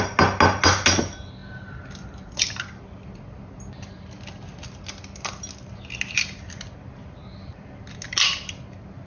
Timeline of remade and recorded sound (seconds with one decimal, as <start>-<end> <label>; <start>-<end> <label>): 0.0-9.1 recorded